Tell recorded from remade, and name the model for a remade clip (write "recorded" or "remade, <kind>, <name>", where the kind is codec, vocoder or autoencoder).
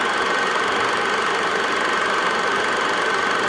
recorded